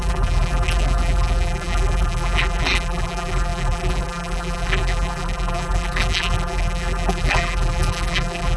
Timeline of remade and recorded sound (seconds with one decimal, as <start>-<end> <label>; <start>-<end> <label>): 0.0-8.6 remade